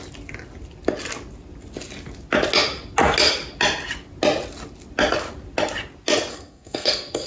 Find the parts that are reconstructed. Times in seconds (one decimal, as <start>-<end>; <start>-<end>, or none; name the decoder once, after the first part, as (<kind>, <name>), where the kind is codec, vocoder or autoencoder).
6.3-7.3 (codec, SNAC)